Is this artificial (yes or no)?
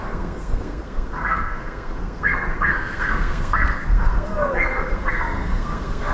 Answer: yes